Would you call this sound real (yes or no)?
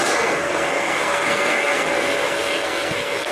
no